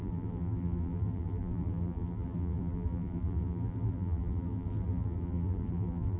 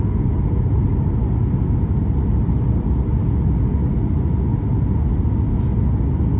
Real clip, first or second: second